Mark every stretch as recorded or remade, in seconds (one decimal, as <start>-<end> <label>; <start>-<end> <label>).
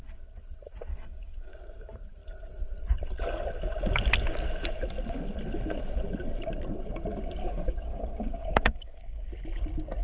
0.0-0.9 recorded; 0.9-1.5 remade; 1.5-7.4 recorded; 7.4-9.3 remade; 9.3-10.0 recorded